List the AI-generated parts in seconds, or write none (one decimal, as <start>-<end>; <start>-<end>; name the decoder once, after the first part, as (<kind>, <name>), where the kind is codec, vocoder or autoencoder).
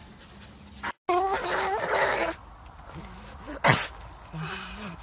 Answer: none